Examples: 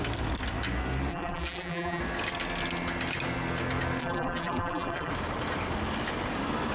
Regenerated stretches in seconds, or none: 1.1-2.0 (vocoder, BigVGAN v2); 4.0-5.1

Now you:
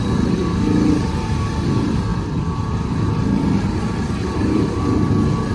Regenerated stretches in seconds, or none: 2.1-5.1 (vocoder, BigVGAN v2)

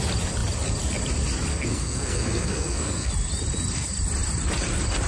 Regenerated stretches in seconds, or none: 1.5-3.1 (codec, SNAC)